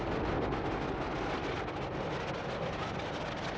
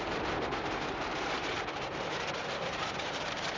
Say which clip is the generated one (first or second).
second